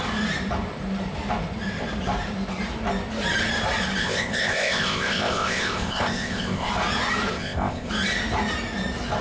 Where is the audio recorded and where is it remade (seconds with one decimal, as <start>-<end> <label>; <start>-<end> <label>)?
0.0-4.0 recorded; 4.0-6.7 remade; 6.7-7.3 recorded; 7.3-7.9 remade; 7.9-9.2 recorded